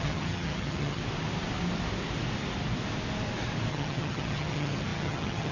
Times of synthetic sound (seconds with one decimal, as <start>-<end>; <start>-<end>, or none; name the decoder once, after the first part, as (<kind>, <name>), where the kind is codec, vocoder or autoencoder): 0.0-1.0 (vocoder, HiFi-GAN); 3.7-5.5